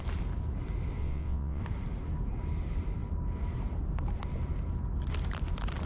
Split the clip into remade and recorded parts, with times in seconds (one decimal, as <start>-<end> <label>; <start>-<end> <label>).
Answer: 0.0-1.0 recorded; 1.0-1.6 remade; 1.6-5.9 recorded